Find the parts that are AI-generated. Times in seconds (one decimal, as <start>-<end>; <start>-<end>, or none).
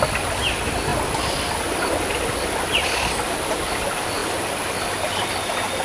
0.0-5.8